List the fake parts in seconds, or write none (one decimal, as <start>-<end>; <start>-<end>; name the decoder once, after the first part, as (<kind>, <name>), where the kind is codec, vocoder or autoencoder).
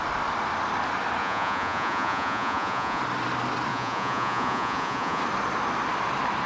1.2-3.0 (vocoder, Vocos); 3.7-5.2